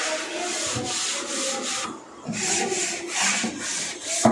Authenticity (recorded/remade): recorded